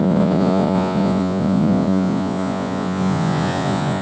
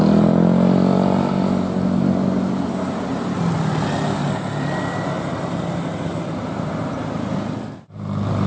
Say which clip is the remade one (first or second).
first